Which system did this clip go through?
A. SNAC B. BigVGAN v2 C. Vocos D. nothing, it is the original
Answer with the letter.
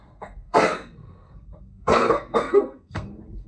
A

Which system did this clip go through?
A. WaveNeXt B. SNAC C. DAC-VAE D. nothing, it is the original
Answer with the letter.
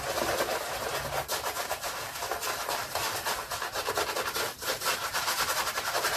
D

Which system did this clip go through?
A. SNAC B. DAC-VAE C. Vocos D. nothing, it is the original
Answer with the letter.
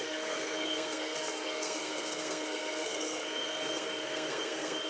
A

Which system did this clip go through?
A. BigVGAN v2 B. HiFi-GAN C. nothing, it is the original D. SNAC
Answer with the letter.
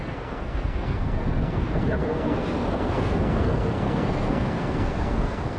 D